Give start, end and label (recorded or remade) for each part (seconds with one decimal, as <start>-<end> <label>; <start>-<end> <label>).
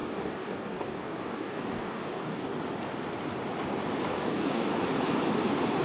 0.0-2.5 remade; 2.5-4.1 recorded; 4.1-4.7 remade; 4.7-5.8 recorded